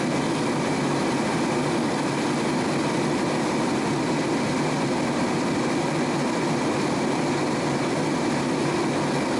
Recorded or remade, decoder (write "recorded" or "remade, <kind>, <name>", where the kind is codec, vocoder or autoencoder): recorded